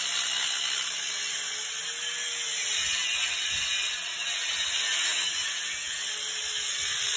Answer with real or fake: real